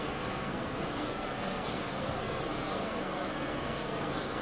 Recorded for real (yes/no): no